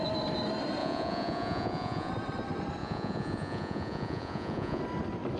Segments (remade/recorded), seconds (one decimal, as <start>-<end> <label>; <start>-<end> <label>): 0.0-0.8 recorded; 0.8-2.1 remade; 2.1-2.8 recorded; 2.8-4.8 remade; 4.8-5.4 recorded